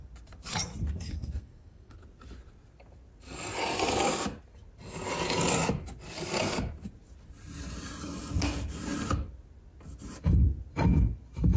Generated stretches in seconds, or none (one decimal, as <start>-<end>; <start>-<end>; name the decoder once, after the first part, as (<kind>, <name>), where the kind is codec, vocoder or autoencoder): 0.8-2.0 (codec, SNAC)